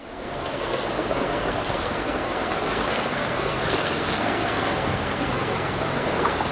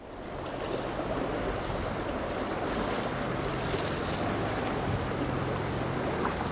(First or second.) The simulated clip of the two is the first